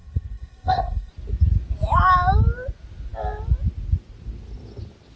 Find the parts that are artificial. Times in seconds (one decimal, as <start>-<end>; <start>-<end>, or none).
0.0-1.1